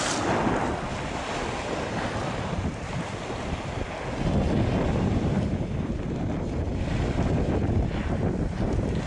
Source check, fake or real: real